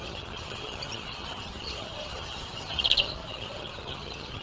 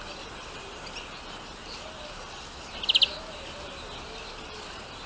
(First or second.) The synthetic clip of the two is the first